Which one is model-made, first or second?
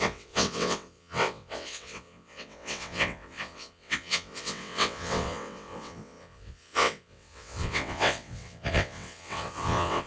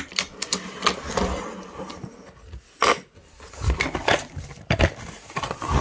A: first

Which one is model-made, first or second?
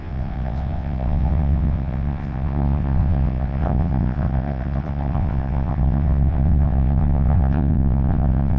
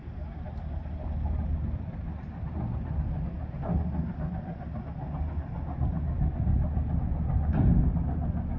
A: first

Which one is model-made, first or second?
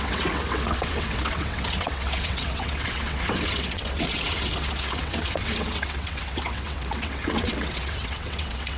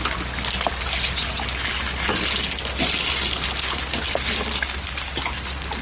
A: first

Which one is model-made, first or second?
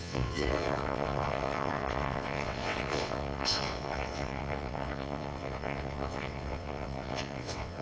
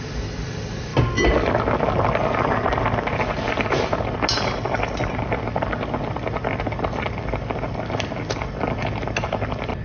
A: first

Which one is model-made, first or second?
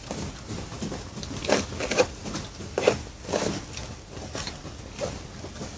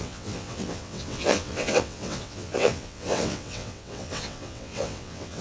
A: second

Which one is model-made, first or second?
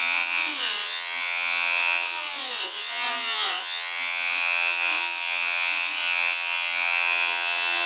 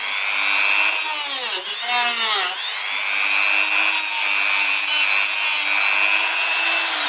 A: first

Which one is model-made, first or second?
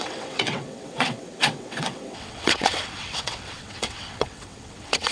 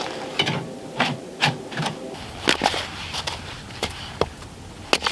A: first